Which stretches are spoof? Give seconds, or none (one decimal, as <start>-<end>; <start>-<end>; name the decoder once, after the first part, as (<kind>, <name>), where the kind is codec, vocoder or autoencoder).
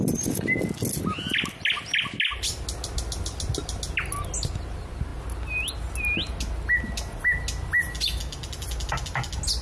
none